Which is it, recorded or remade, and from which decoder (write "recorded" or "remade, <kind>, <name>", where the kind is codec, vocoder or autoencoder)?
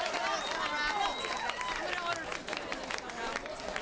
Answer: recorded